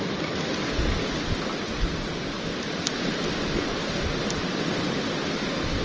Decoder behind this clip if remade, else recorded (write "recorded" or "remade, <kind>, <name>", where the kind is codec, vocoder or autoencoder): recorded